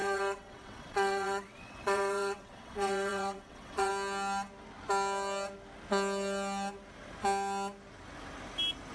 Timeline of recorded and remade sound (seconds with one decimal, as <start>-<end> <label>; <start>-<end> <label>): 0.0-3.9 remade; 3.9-8.9 recorded